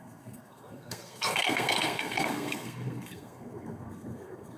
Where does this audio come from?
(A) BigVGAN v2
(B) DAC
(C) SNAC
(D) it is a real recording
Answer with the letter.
C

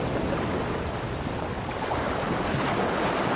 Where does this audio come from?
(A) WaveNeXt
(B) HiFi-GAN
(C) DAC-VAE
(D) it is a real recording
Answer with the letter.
D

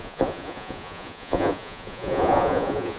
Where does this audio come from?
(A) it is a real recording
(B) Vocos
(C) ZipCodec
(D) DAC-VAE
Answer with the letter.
B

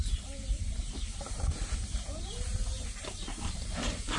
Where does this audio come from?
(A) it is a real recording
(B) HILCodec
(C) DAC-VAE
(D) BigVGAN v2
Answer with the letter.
D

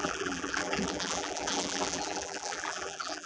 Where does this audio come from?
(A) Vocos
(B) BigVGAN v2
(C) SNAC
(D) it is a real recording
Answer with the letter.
B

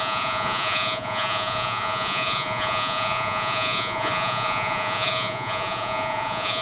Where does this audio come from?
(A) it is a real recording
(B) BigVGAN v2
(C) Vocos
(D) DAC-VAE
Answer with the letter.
C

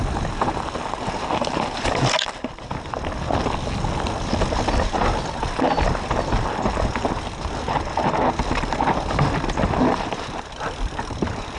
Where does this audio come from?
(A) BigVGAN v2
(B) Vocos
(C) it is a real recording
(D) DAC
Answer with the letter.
C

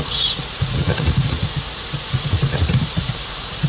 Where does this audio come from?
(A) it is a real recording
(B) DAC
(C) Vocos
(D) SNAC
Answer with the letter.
C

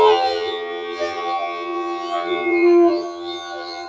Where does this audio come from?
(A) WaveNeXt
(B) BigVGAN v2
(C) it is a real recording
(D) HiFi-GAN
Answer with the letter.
D